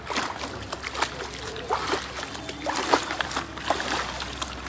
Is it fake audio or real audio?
real